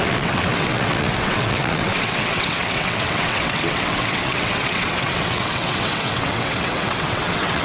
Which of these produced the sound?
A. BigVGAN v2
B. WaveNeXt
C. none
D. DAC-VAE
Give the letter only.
B